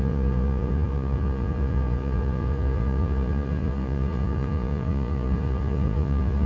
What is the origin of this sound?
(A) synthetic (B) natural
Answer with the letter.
A